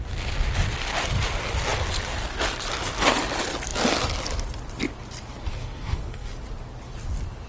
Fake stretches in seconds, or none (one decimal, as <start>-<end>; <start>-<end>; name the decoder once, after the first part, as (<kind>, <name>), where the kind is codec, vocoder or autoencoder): 5.5-6.3 (codec, SNAC)